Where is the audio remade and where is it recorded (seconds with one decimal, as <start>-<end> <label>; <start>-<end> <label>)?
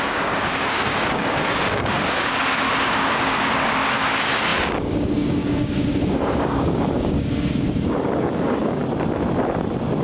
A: 0.0-8.8 remade; 8.8-10.0 recorded